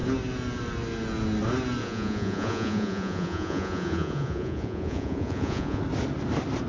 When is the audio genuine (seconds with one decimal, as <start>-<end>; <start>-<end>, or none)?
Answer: 0.0-1.8; 5.8-6.7